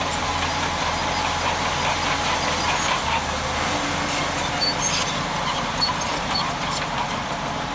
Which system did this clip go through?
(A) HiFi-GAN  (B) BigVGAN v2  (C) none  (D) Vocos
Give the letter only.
C